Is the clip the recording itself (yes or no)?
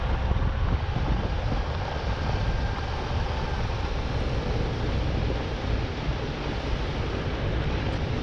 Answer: yes